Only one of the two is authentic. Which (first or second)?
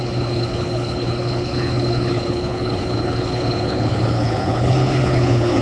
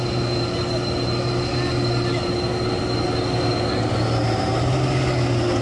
second